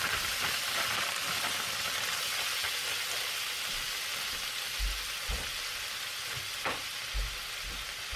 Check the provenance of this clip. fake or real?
real